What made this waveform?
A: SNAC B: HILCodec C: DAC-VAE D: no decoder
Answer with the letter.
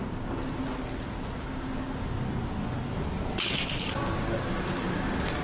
D